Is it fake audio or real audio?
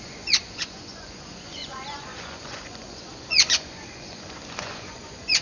fake